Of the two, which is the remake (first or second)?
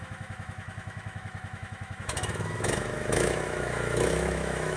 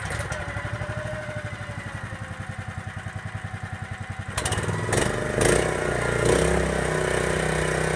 first